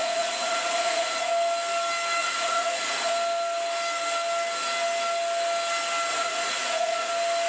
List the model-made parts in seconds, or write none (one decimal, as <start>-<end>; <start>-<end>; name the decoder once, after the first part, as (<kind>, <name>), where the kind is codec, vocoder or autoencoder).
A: 0.0-1.3 (vocoder, Vocos); 2.2-3.1; 6.1-7.1